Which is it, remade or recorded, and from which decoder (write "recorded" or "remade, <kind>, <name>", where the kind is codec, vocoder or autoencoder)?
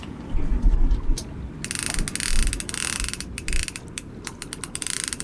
recorded